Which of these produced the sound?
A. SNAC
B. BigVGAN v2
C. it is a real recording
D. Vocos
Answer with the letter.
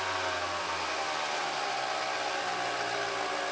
C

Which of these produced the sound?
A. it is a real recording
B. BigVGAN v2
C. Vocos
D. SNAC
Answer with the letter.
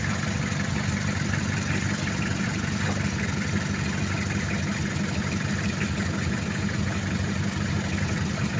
A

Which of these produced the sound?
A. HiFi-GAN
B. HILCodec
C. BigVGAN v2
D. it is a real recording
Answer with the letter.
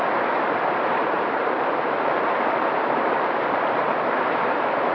C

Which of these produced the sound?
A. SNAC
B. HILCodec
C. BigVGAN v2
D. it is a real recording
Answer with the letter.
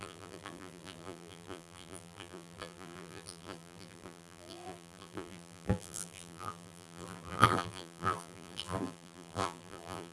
C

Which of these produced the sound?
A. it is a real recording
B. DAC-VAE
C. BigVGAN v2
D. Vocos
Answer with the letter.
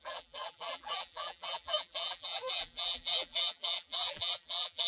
C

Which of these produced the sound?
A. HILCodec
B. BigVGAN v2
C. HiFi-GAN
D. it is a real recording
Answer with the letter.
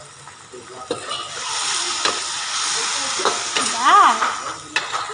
D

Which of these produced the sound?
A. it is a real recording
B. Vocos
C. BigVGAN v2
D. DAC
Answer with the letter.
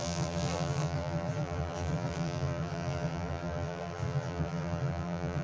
C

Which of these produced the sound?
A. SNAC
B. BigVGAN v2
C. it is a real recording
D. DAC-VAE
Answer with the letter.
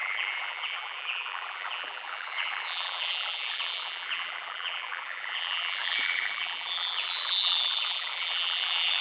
B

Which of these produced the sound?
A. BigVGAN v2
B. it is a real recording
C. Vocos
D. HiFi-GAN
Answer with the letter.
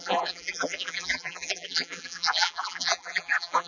A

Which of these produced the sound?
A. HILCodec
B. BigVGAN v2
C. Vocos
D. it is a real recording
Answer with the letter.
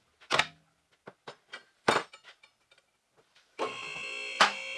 D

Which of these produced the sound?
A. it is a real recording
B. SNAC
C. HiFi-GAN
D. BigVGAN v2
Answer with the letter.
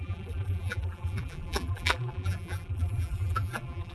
D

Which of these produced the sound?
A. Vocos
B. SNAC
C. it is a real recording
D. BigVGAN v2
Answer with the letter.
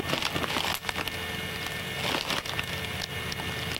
C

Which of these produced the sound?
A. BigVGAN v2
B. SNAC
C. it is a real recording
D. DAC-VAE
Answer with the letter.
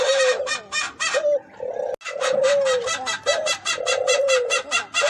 C